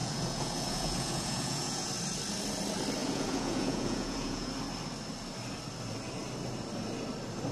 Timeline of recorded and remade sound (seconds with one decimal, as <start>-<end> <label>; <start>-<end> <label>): 0.0-1.9 remade; 1.9-3.0 recorded; 3.0-4.5 remade; 4.5-7.5 recorded